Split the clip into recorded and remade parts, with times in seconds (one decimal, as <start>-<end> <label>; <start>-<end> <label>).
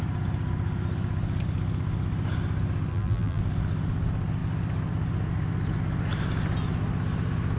0.0-2.9 recorded; 2.9-3.4 remade; 3.4-7.6 recorded